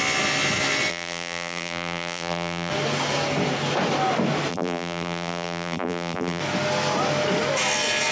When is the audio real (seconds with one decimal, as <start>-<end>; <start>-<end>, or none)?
0.0-0.9; 2.7-4.5; 6.4-8.1